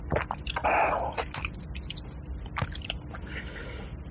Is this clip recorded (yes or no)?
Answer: yes